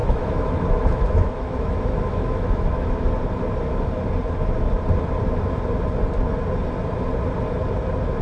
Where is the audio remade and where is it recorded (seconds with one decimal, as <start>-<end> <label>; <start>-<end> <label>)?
0.0-2.9 remade; 2.9-8.2 recorded